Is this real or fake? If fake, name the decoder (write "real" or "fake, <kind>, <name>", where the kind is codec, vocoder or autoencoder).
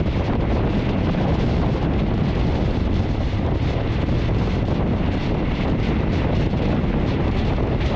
real